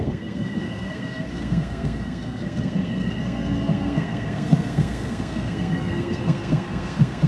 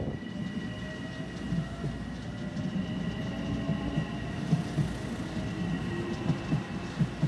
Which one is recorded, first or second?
second